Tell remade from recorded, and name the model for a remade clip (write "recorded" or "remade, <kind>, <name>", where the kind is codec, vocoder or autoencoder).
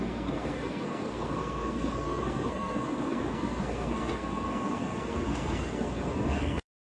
remade, codec, SNAC